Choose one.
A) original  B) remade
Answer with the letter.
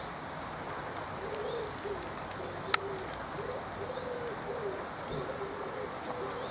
A